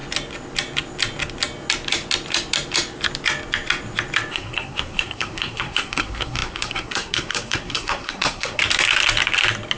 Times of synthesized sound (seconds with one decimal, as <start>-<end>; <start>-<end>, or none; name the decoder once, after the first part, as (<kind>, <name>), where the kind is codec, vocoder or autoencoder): 4.3-8.6 (codec, SNAC)